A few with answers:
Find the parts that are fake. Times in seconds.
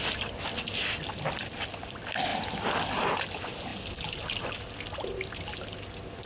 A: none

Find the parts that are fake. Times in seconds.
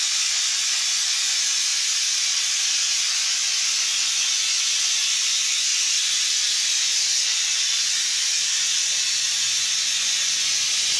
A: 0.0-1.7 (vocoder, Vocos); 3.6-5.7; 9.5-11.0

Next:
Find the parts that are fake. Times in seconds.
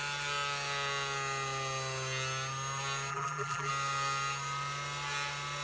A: 3.1-3.7 (vocoder, BigVGAN v2)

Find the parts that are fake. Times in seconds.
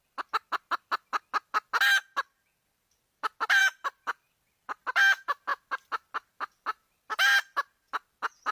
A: 3.6-4.3 (vocoder, BigVGAN v2)